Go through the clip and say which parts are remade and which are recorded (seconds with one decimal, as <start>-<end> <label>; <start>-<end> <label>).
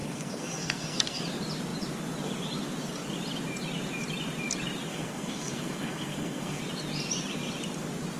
0.0-1.2 remade; 1.2-4.9 recorded; 4.9-6.6 remade; 6.6-8.2 recorded